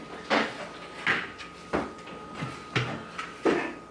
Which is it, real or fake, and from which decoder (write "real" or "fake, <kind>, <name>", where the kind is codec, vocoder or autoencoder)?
real